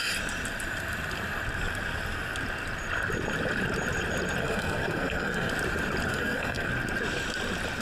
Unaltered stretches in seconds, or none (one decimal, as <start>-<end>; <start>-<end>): 0.0-4.4; 5.5-6.1; 6.7-7.8